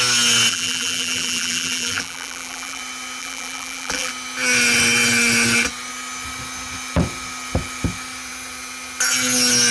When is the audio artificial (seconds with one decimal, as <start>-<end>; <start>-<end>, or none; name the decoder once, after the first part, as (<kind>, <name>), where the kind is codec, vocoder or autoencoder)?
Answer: 0.5-2.8 (vocoder, BigVGAN v2); 3.2-4.1

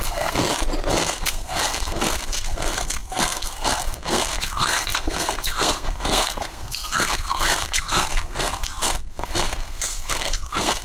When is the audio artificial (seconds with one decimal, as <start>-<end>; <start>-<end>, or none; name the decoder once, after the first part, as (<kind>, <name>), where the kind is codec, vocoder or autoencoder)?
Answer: 0.0-0.4 (codec, SNAC); 0.9-10.8

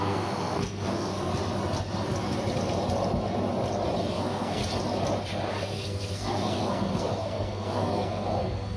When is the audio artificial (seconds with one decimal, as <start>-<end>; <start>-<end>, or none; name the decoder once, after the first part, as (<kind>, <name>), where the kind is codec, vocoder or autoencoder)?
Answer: 0.0-1.3 (codec, SNAC); 4.1-4.6; 5.5-8.8

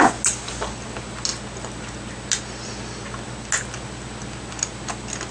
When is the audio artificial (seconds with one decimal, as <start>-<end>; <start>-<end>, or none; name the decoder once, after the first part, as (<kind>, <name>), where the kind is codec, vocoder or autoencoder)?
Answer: none

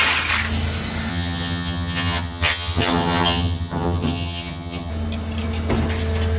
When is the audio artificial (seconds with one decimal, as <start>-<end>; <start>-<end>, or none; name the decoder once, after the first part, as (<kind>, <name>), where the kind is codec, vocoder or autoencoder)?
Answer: 1.1-4.9 (vocoder, HiFi-GAN)

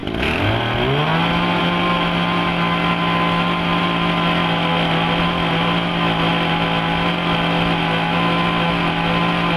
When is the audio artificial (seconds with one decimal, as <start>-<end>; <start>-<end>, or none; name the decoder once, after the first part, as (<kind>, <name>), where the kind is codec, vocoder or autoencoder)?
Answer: none